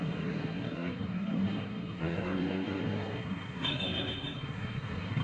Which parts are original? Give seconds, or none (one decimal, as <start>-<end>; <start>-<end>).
none